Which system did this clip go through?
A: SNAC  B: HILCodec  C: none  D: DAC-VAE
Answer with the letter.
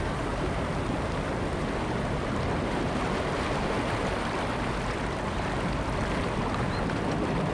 C